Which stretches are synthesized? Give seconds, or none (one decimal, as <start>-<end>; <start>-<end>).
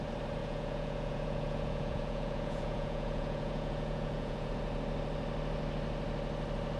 0.4-4.5